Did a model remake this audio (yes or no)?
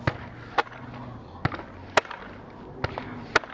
no